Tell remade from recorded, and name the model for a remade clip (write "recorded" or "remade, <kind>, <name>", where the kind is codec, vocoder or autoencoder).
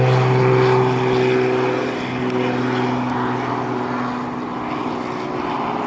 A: recorded